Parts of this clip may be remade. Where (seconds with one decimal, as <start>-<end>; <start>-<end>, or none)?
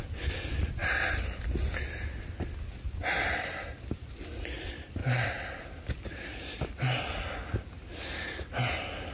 0.8-1.8; 5.0-6.6